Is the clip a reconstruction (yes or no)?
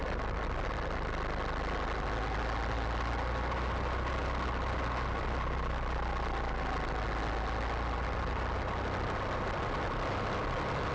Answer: no